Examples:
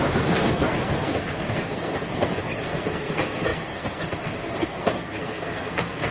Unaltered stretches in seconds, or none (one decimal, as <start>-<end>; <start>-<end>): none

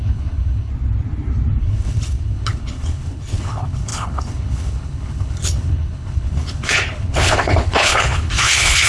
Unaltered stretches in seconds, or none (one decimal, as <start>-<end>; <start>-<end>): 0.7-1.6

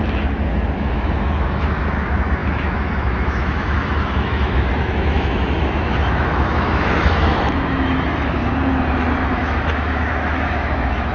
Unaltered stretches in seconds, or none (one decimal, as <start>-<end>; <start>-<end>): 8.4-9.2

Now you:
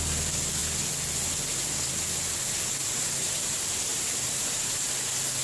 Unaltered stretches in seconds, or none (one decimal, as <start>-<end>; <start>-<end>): 0.0-2.8; 3.5-3.9; 4.9-5.4

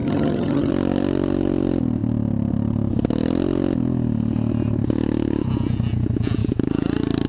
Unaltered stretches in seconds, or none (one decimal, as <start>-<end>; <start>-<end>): 0.7-7.3

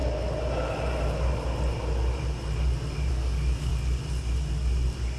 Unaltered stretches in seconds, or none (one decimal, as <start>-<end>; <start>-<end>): 0.0-3.1; 3.7-5.2

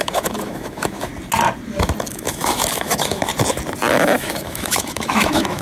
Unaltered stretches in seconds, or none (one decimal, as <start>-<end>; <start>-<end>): 1.1-2.1; 3.3-3.9